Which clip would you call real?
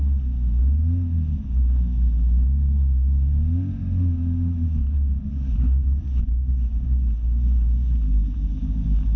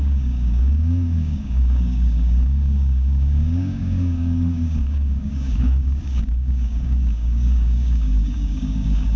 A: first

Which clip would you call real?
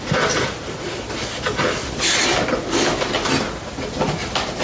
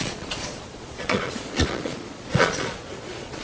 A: first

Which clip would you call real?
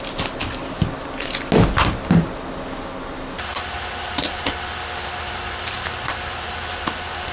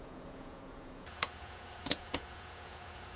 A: first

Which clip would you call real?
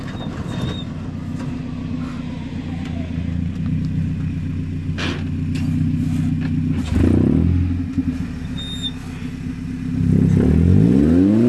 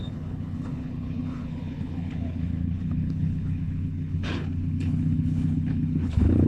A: first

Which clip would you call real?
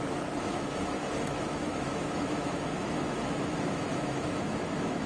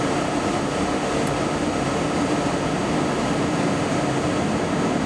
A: second